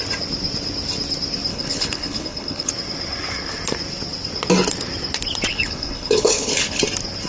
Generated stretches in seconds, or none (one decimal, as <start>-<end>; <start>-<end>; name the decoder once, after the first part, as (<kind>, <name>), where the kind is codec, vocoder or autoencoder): 1.5-2.7 (codec, HILCodec); 5.5-6.8